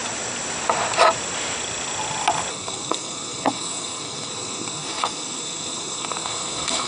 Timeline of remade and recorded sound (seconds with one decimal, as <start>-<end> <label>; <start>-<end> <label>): 0.0-2.5 recorded; 2.5-6.9 remade